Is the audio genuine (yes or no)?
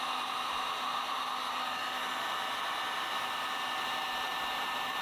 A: yes